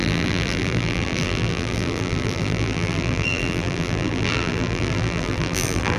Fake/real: fake